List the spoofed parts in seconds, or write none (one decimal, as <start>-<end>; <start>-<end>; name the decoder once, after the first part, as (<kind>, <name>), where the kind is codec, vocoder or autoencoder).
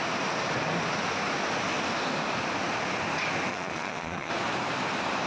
3.5-4.3 (vocoder, Vocos)